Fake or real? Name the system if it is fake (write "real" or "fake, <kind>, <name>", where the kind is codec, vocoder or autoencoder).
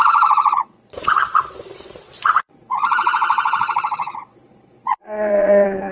fake, vocoder, Vocos